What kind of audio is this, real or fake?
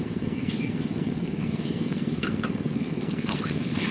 fake